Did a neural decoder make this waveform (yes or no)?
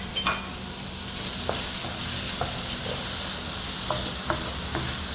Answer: no